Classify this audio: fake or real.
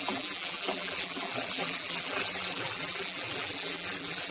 fake